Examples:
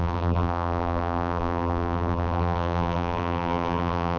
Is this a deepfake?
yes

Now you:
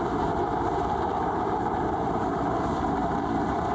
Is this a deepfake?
yes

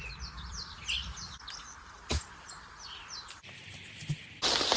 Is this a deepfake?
yes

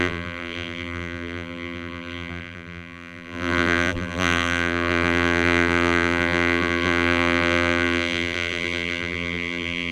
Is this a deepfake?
yes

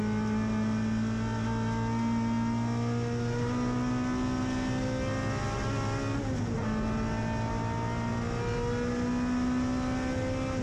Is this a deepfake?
no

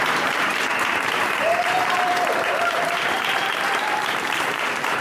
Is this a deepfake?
yes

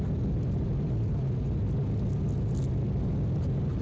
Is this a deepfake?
no